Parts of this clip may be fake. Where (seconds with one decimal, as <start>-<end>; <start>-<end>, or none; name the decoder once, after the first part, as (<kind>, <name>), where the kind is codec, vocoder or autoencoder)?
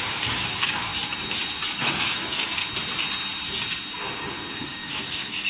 0.0-0.9 (codec, DAC); 1.7-2.6; 4.6-5.5